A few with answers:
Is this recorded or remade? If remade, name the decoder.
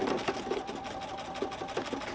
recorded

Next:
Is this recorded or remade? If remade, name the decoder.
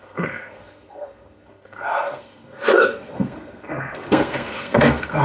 remade, codec, SNAC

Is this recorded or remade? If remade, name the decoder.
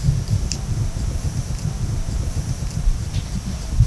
recorded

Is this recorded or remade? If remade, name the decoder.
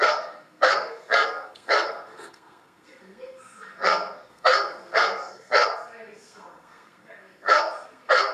remade, codec, SNAC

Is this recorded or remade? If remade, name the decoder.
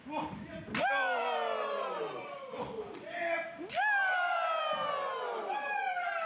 recorded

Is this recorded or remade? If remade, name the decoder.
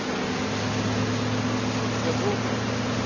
recorded